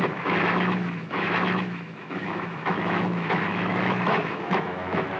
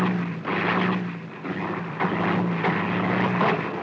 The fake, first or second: first